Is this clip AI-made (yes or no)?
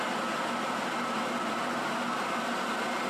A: no